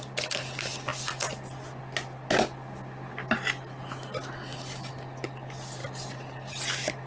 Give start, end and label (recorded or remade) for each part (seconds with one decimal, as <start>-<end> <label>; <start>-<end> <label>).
0.0-7.1 recorded